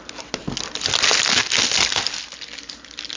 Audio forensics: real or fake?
real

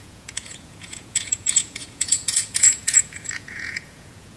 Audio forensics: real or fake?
fake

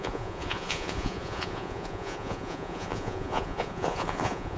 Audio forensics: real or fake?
fake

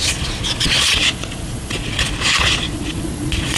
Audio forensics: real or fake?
fake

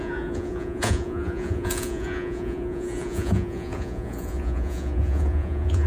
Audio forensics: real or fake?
fake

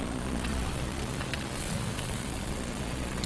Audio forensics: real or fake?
fake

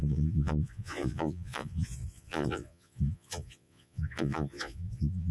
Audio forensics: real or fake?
fake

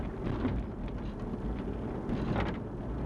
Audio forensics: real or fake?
real